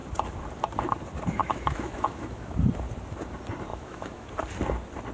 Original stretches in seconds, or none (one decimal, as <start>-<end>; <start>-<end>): 0.0-1.4; 2.5-3.7; 4.3-5.1